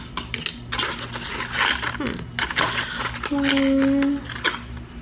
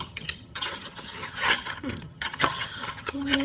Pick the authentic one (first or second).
first